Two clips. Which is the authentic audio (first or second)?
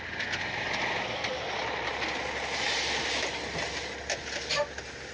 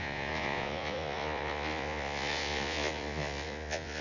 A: first